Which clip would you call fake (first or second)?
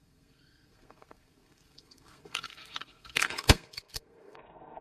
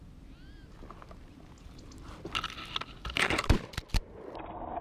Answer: first